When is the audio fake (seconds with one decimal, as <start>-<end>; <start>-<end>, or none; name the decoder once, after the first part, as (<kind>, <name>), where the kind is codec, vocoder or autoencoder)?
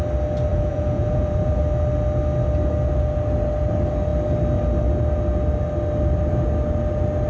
0.5-1.6 (vocoder, Vocos)